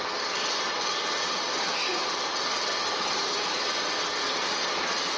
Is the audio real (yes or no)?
yes